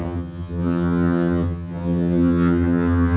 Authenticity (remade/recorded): remade